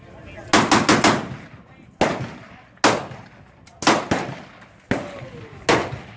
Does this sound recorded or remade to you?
recorded